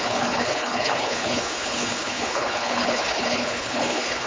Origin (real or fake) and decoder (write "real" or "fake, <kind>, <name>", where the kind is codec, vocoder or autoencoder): fake, codec, HILCodec